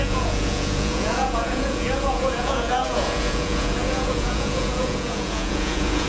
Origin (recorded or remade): remade